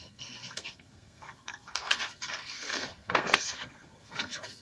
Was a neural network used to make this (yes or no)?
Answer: yes